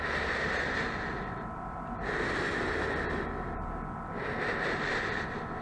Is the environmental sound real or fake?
real